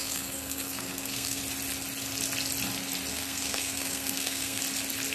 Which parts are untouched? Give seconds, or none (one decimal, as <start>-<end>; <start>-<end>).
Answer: 1.4-3.1; 4.6-5.1